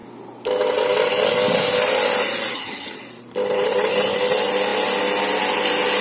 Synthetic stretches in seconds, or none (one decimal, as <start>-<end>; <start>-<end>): 2.5-3.0